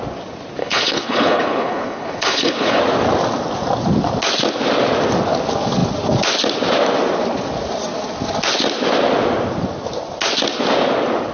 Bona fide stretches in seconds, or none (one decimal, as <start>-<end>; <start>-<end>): 0.0-0.6; 2.8-11.3